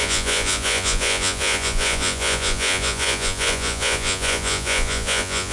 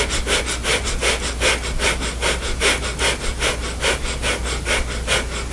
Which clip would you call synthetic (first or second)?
first